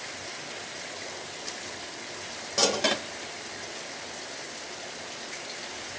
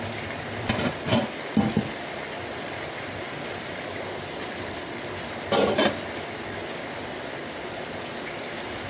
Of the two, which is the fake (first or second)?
second